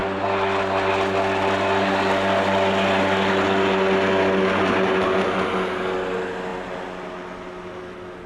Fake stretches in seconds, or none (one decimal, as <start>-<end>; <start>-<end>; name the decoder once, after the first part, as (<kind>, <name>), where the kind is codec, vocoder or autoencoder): none